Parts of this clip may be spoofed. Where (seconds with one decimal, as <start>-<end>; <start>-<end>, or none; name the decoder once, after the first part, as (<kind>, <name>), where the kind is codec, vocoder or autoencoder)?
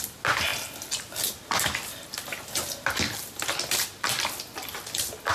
none